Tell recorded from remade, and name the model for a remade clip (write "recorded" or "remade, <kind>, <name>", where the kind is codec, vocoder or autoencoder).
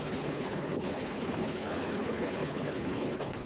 remade, codec, HILCodec